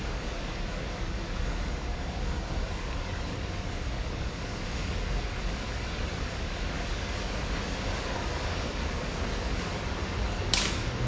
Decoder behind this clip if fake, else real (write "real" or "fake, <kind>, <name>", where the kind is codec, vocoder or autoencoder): fake, codec, DAC